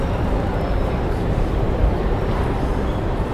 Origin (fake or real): fake